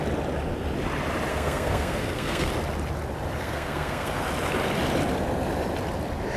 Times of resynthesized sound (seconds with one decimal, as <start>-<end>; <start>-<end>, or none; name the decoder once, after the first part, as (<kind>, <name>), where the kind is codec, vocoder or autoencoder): 1.3-2.5 (codec, SNAC); 3.4-4.2